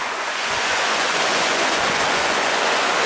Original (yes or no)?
no